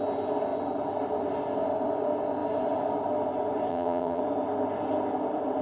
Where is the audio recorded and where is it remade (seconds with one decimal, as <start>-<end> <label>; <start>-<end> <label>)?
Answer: 0.0-3.7 recorded; 3.7-4.2 remade; 4.2-5.6 recorded